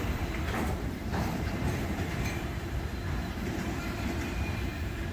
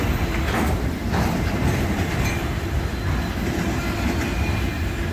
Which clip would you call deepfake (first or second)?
first